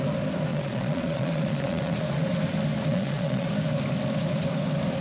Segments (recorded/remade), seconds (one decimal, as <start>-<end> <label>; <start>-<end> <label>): 0.0-0.5 recorded; 0.5-2.0 remade; 2.0-2.9 recorded; 2.9-3.5 remade; 3.5-5.0 recorded